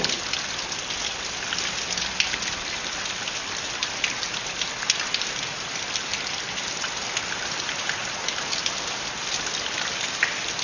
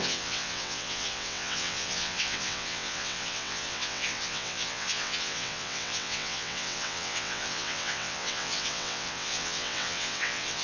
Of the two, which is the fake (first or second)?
second